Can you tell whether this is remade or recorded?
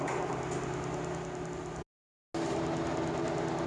recorded